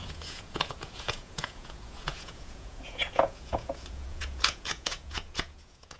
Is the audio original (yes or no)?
no